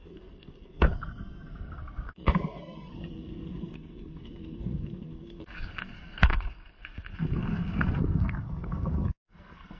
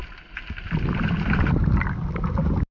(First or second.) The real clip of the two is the second